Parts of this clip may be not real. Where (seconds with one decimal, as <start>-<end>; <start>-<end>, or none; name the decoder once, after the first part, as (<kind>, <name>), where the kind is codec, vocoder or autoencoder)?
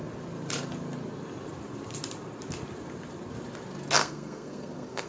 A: 4.0-5.1 (codec, SNAC)